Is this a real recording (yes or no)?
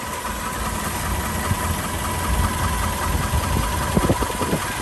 yes